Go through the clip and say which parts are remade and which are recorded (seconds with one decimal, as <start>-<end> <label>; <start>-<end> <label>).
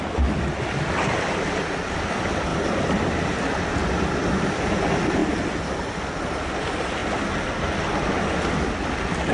0.0-9.3 recorded